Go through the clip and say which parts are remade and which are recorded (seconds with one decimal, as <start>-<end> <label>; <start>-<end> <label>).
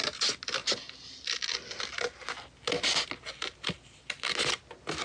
0.0-5.0 recorded